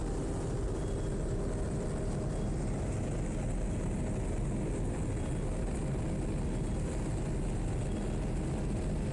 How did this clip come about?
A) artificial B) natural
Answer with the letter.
B